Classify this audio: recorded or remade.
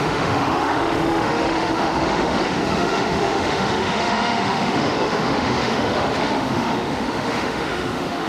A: remade